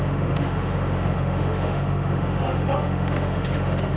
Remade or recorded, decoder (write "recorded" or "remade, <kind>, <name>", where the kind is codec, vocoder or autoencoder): remade, autoencoder, DAC-VAE